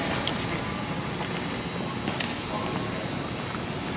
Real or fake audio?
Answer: real